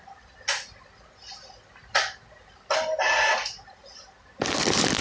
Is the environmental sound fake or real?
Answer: real